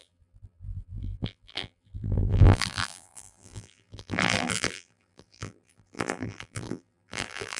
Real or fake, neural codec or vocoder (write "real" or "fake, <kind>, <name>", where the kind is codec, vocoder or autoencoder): fake, vocoder, BigVGAN v2